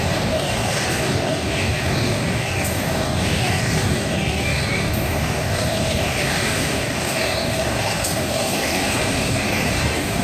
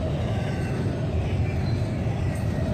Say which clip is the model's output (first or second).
first